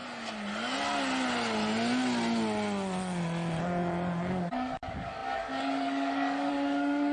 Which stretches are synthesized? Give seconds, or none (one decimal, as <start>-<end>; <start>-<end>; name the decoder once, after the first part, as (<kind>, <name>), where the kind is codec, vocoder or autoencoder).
4.3-7.1 (codec, DAC)